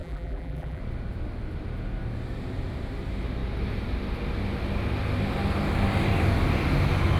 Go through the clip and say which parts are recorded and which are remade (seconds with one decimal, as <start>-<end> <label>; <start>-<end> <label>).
0.0-0.8 remade; 0.8-7.2 recorded

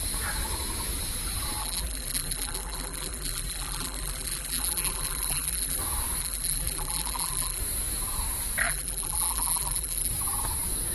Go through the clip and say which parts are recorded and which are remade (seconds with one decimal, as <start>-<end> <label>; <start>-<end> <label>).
0.0-1.6 recorded; 1.6-5.8 remade; 5.8-6.2 recorded; 6.2-7.6 remade; 7.6-8.6 recorded; 8.6-10.1 remade; 10.1-10.9 recorded

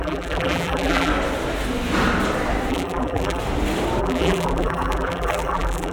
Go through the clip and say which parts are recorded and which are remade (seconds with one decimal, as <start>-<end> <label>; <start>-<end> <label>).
0.0-1.1 remade; 1.1-2.7 recorded; 2.7-3.4 remade; 3.4-4.0 recorded; 4.0-5.9 remade

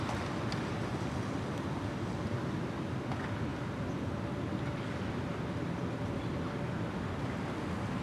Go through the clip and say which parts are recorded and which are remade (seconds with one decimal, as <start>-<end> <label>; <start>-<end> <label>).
0.0-8.0 recorded

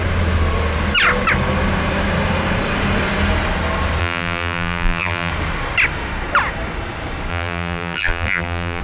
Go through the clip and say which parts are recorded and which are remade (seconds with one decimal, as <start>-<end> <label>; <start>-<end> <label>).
0.0-4.0 recorded; 4.0-5.3 remade; 5.3-7.3 recorded; 7.3-8.8 remade

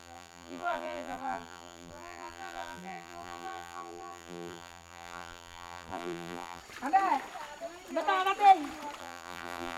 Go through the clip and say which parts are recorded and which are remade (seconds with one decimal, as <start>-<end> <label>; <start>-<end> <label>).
0.0-6.6 remade; 6.6-9.0 recorded; 9.0-9.8 remade